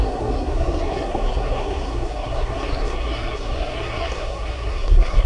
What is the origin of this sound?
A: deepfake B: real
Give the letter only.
A